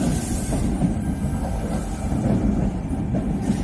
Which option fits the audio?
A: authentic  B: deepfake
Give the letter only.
A